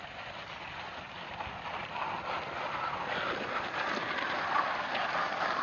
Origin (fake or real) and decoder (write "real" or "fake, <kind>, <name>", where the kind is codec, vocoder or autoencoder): real